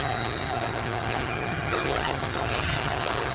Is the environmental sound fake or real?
fake